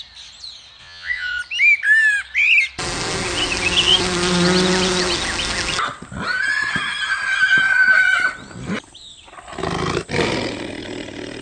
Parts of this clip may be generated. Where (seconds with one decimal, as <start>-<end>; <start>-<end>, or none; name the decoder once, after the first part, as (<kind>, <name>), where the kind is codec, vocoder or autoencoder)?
0.8-1.4 (vocoder, Vocos)

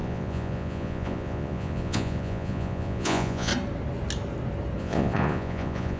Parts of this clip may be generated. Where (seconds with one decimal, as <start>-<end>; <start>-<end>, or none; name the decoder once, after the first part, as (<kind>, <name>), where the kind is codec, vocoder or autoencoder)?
0.0-3.5 (vocoder, Vocos); 4.8-6.0

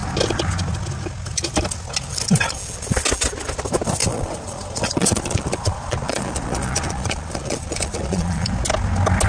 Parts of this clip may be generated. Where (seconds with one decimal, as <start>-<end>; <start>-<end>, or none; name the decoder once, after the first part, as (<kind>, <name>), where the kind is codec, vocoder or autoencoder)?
4.0-8.5 (vocoder, Vocos)

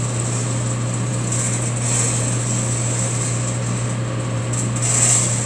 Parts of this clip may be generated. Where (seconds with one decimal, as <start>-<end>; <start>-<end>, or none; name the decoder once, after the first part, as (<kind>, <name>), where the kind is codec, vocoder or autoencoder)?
none

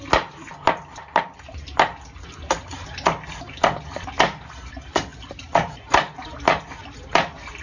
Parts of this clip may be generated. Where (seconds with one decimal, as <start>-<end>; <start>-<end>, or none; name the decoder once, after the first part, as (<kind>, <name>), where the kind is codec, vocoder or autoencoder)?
none